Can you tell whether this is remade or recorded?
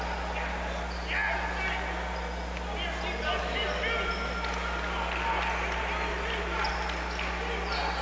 recorded